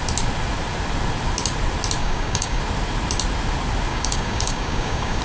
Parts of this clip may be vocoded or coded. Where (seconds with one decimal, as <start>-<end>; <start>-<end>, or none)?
2.0-2.6; 3.9-5.2